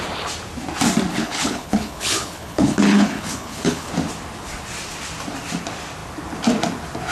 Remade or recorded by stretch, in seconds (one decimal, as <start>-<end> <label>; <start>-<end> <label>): 0.0-1.1 recorded; 1.1-3.9 remade; 3.9-7.1 recorded